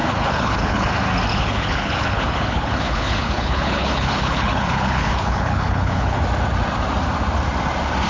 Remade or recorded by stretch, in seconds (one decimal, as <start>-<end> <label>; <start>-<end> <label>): 0.0-0.9 remade; 0.9-1.3 recorded; 1.3-6.2 remade; 6.2-8.1 recorded